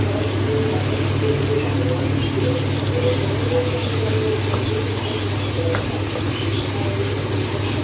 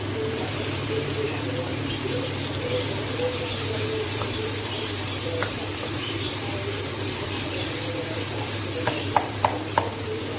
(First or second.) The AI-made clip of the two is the second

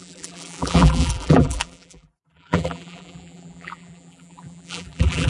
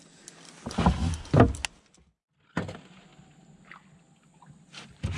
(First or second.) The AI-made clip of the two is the first